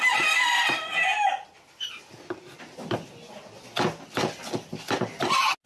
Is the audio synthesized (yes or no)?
no